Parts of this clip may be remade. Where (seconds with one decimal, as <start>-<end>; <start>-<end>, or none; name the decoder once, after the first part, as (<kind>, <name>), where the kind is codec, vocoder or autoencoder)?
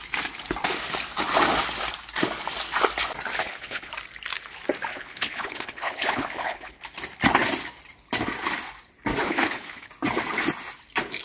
3.4-3.9 (codec, HILCodec); 4.9-6.8; 9.2-9.9